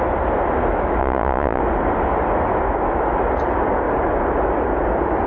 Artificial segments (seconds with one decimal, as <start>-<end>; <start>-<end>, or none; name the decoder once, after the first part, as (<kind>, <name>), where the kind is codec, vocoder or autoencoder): 1.0-1.6 (vocoder, Vocos)